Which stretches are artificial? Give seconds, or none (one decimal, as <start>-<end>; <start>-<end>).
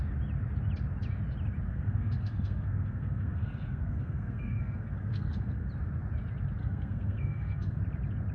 1.7-5.7; 6.6-7.8